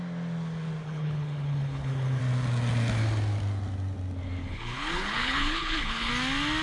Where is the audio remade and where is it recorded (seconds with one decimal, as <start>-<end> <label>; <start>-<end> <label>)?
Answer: 0.0-0.8 recorded; 0.8-2.2 remade; 2.2-4.4 recorded; 4.4-6.1 remade; 6.1-6.6 recorded